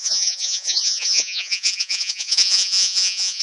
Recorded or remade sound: remade